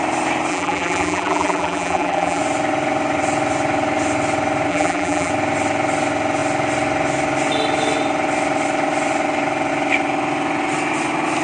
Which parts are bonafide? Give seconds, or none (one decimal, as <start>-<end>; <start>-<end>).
0.0-0.5; 2.4-4.7; 5.3-11.4